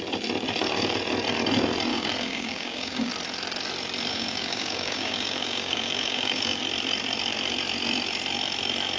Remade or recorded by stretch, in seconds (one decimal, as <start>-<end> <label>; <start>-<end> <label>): 0.0-1.9 recorded; 1.9-3.1 remade; 3.1-4.1 recorded; 4.1-6.6 remade; 6.6-9.0 recorded